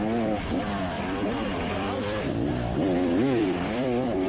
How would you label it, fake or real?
fake